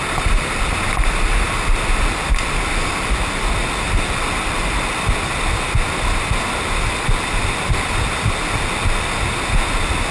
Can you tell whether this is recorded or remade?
recorded